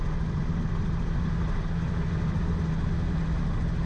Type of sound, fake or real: real